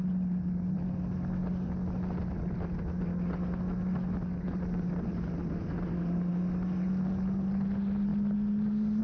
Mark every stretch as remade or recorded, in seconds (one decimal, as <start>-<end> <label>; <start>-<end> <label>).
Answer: 0.0-9.0 recorded